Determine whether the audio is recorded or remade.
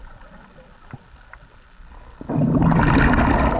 recorded